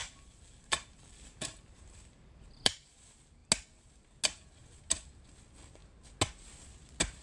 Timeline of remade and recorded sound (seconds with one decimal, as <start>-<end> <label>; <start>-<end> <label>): 0.0-3.0 remade; 3.0-7.2 recorded

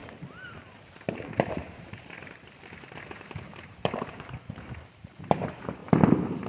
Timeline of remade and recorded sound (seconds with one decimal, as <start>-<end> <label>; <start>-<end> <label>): 0.0-5.8 remade; 5.8-6.5 recorded

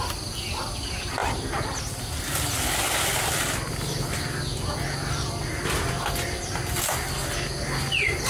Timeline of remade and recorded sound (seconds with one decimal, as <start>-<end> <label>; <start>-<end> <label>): 0.0-8.3 recorded

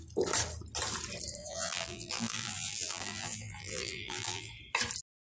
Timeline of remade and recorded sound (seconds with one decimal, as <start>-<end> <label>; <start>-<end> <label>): 0.0-1.4 recorded; 1.4-4.5 remade; 4.5-5.2 recorded

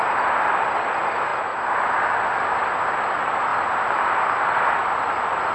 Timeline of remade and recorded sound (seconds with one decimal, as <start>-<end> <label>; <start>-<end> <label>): 0.0-5.5 recorded

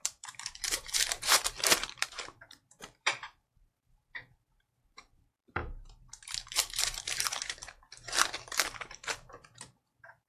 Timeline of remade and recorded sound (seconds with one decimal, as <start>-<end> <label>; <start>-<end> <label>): 0.0-10.3 remade

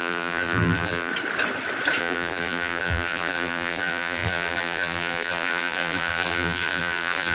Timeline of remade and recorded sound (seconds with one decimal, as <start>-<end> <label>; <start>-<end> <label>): 0.0-1.1 remade; 1.1-2.0 recorded; 2.0-7.3 remade